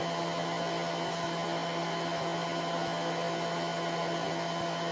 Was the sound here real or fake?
real